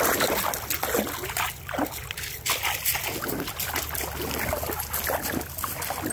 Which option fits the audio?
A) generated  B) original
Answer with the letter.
B